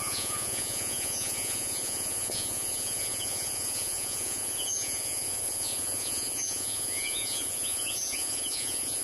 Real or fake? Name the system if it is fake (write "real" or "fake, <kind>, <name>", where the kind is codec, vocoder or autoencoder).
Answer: fake, vocoder, Vocos